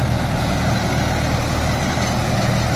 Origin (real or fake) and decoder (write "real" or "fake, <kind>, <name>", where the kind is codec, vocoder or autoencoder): real